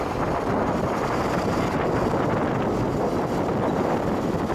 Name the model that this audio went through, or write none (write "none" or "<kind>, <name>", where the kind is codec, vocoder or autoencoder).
none